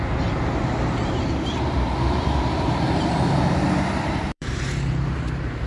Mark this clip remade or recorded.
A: remade